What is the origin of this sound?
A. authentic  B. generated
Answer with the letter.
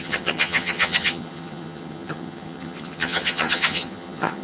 B